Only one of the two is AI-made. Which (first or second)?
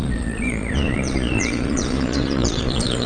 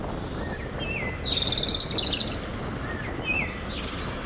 first